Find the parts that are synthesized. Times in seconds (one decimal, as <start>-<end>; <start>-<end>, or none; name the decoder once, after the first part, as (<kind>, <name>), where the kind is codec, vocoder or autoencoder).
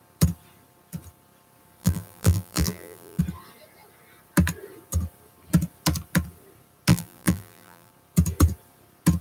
1.8-3.2 (vocoder, BigVGAN v2); 6.9-7.9